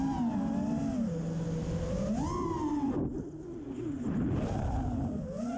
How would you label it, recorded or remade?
recorded